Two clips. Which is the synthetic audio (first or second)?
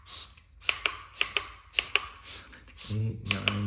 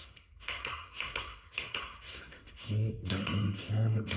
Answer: second